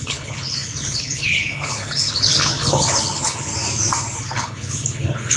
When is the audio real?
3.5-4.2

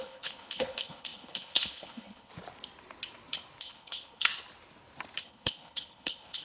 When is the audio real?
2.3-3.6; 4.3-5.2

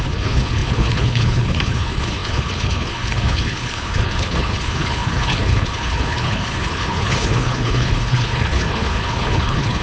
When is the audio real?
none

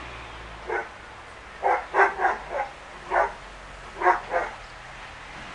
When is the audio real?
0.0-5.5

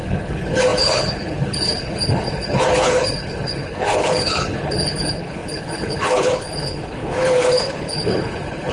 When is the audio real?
none